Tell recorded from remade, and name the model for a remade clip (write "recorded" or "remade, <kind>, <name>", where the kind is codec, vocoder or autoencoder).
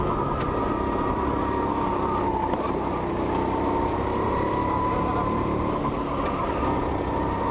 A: recorded